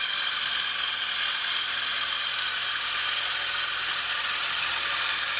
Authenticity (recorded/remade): recorded